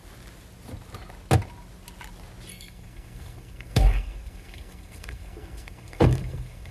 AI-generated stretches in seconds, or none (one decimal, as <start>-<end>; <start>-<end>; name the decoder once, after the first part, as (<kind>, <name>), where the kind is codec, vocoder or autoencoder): 2.5-6.7 (codec, SNAC)

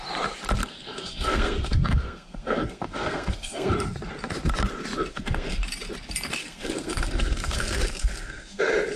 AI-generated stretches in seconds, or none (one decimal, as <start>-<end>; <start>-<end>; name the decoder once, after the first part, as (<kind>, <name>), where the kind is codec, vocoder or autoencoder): 0.6-3.7 (codec, SNAC); 5.1-5.6; 6.4-8.6

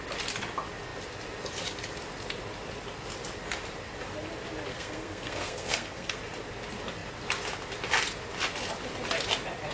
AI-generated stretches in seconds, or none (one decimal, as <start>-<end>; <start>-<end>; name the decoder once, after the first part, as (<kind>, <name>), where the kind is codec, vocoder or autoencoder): 4.7-6.2 (codec, SNAC)

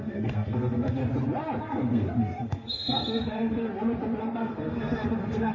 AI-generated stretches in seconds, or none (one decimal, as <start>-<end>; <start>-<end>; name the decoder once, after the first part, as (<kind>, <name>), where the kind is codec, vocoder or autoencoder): 0.0-1.0 (codec, SNAC); 1.6-3.7; 4.2-5.5

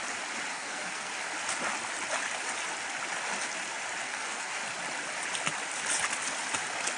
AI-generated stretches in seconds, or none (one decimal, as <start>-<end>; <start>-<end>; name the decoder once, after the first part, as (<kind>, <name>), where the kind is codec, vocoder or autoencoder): 0.5-1.1 (codec, SNAC); 4.0-4.6

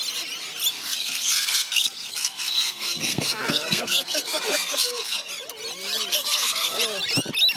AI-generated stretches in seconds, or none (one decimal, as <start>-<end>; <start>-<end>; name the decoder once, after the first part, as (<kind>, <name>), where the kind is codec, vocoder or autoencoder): 0.7-5.3 (codec, SNAC); 6.1-6.8

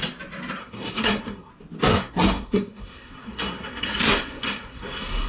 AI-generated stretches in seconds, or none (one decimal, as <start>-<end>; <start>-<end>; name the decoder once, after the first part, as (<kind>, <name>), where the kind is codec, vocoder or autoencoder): 0.6-1.5 (codec, SNAC); 1.9-5.3

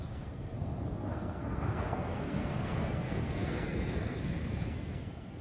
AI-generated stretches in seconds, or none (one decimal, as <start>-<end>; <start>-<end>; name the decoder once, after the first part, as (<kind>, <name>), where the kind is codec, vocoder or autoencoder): 0.0-5.4 (codec, SNAC)